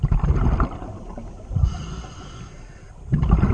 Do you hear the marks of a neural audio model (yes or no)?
yes